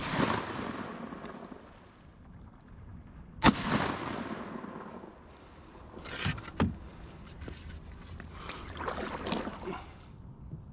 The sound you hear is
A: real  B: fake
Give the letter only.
A